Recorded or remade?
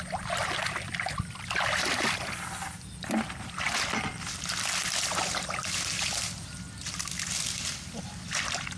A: recorded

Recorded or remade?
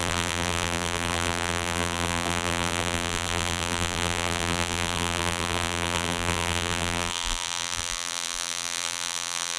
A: remade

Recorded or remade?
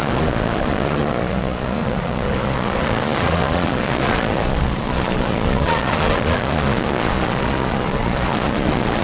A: remade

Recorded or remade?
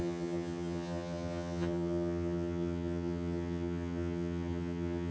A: remade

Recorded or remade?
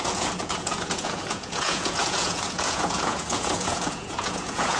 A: remade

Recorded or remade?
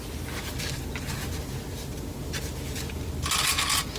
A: recorded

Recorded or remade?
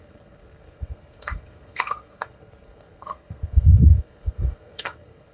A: remade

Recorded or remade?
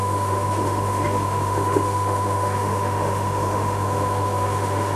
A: remade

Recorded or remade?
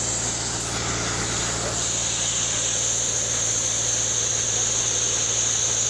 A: recorded